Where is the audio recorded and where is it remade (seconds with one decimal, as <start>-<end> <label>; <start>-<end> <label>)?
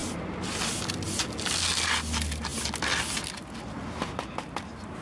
0.0-5.0 recorded